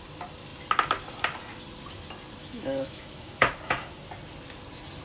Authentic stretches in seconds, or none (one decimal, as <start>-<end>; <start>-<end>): 0.0-2.4; 3.5-5.0